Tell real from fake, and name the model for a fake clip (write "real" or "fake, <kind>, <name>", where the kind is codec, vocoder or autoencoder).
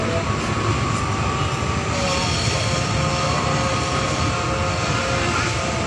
real